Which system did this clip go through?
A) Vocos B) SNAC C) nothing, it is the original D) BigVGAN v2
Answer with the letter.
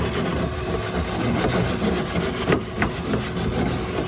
C